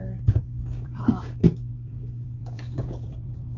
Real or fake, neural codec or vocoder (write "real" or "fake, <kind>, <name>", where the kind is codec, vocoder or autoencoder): fake, codec, DAC